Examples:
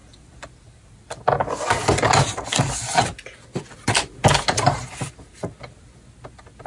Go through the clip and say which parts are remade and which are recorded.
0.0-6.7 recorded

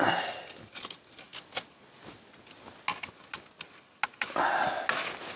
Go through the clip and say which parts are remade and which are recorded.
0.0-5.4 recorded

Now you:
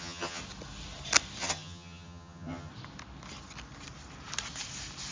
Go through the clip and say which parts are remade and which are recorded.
0.0-0.4 remade; 0.4-1.4 recorded; 1.4-2.7 remade; 2.7-5.1 recorded

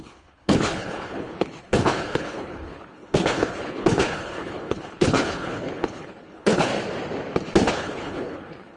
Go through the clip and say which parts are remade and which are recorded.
0.0-6.7 remade; 6.7-7.7 recorded; 7.7-8.8 remade

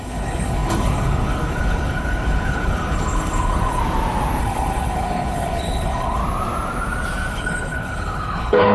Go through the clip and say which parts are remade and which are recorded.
0.0-3.8 remade; 3.8-4.4 recorded; 4.4-6.2 remade; 6.2-7.3 recorded; 7.3-8.7 remade

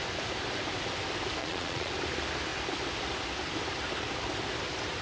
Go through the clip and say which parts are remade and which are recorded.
0.0-1.4 recorded; 1.4-1.9 remade; 1.9-5.0 recorded